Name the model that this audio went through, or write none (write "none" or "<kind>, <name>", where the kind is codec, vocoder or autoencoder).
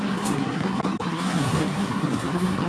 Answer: codec, SNAC